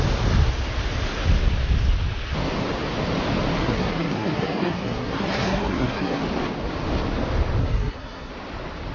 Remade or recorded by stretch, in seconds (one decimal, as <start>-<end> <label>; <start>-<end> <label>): 0.0-3.6 recorded; 3.6-6.2 remade; 6.2-7.6 recorded; 7.6-8.3 remade; 8.3-8.9 recorded